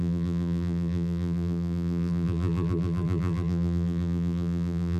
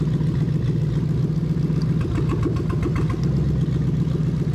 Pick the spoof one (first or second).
first